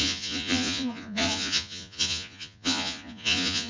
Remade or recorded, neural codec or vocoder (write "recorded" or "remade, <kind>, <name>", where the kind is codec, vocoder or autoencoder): remade, vocoder, Vocos